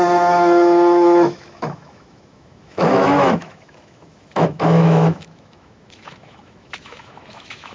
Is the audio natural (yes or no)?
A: no